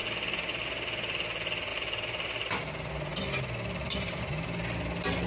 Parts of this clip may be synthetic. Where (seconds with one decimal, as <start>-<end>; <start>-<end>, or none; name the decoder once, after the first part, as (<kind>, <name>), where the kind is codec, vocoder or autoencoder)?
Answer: 0.0-0.6 (vocoder, BigVGAN v2); 1.7-2.7